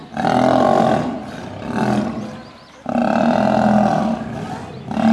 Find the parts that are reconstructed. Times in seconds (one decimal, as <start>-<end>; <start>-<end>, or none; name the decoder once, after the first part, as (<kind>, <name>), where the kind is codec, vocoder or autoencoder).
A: none